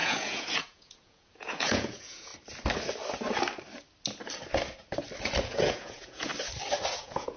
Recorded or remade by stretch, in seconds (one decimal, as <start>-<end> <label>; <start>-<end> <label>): 0.0-2.3 remade; 2.3-5.4 recorded; 5.4-6.3 remade; 6.3-6.9 recorded; 6.9-7.4 remade